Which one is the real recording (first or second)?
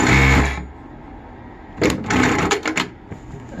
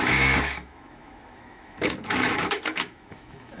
first